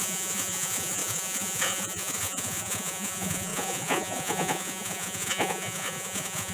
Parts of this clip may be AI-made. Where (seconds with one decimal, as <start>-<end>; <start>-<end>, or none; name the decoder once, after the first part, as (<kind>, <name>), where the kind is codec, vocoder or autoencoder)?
0.0-6.5 (vocoder, Vocos)